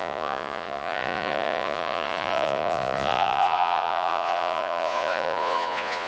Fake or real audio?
fake